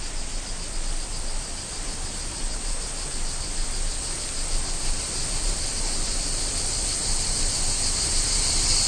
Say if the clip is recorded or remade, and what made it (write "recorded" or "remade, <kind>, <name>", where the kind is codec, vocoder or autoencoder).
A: recorded